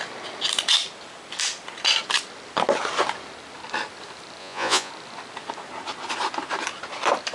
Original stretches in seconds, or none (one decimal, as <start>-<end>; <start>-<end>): 0.0-4.4; 4.9-7.3